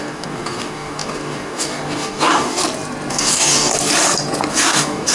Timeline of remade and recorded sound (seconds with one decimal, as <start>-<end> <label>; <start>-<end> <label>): 0.0-2.6 remade; 2.6-3.1 recorded; 3.1-3.7 remade; 3.7-4.5 recorded; 4.5-5.1 remade